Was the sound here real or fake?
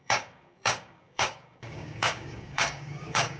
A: fake